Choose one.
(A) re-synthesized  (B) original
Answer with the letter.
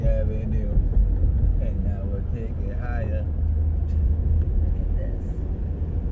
B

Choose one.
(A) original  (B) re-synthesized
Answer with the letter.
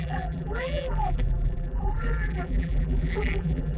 B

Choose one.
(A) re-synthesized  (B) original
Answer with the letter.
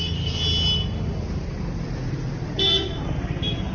B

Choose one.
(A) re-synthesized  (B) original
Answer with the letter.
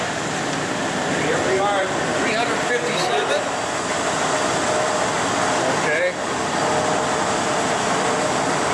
A